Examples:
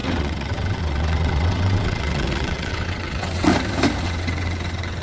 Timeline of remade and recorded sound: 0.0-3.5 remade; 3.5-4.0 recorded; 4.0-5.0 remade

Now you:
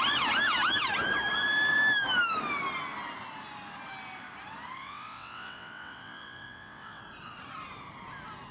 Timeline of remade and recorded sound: 0.0-4.8 recorded; 4.8-7.0 remade; 7.0-8.5 recorded

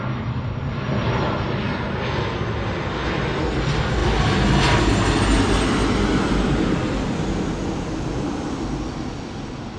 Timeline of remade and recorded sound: 0.0-9.8 recorded

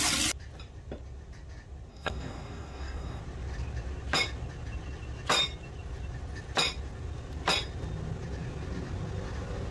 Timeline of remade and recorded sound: 0.0-1.9 recorded; 1.9-3.2 remade; 3.2-9.7 recorded

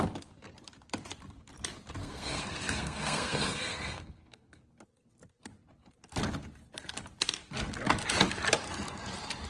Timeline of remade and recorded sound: 0.0-2.0 recorded; 2.0-4.6 remade; 4.6-9.5 recorded

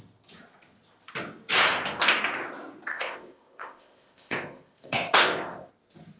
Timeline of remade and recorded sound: 0.0-2.9 recorded; 2.9-5.7 remade; 5.7-6.2 recorded

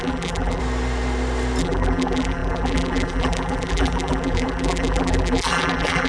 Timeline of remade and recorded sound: 0.0-0.6 remade; 0.6-1.6 recorded; 1.6-6.1 remade

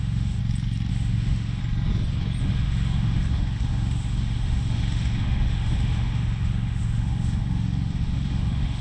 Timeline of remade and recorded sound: 0.0-0.4 remade; 0.4-0.9 recorded; 0.9-1.6 remade; 1.6-2.4 recorded; 2.4-8.8 remade